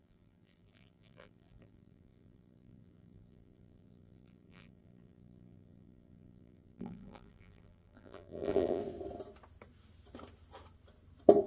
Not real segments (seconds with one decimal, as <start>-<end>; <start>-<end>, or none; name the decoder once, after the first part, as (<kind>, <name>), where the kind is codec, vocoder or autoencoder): 0.0-8.8 (vocoder, BigVGAN v2)